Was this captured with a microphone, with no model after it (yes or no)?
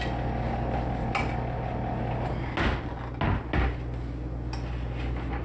yes